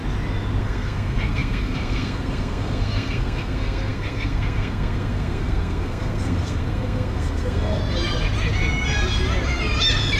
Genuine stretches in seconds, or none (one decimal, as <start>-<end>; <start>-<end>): 0.0-0.6; 7.8-10.2

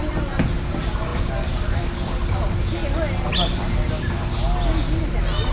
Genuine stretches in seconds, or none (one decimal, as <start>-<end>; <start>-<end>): 0.0-5.5

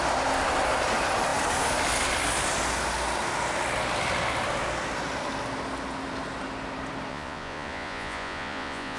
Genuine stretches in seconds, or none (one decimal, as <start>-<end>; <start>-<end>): 0.0-7.1

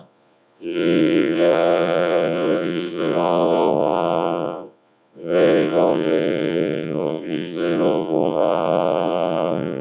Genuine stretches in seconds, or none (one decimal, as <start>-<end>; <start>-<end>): none

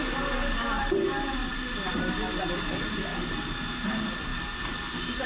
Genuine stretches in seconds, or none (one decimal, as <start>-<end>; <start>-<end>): 0.0-5.3

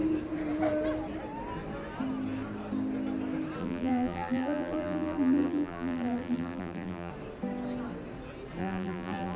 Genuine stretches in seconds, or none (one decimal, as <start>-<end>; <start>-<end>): 0.0-3.6; 7.1-8.6

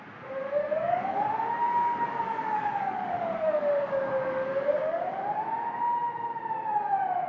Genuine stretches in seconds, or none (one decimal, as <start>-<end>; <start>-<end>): 0.0-0.6; 1.2-1.6; 5.0-7.3

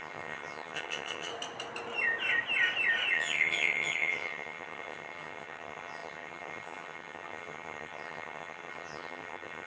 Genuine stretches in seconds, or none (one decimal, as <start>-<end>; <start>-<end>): 1.3-3.1